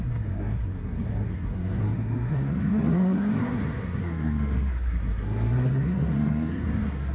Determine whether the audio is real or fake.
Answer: fake